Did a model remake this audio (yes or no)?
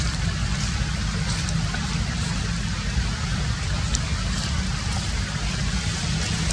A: no